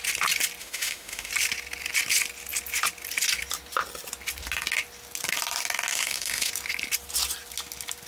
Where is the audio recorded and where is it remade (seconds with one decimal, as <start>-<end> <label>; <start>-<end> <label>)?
0.0-0.6 recorded; 0.6-1.3 remade; 1.3-5.9 recorded; 5.9-6.5 remade; 6.5-8.1 recorded